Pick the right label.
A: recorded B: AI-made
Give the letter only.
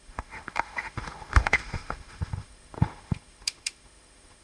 B